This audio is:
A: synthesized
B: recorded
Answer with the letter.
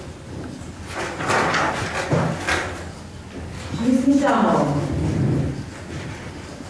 B